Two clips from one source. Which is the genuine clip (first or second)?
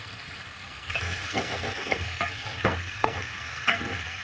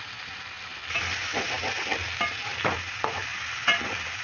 second